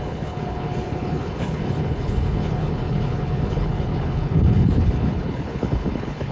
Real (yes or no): no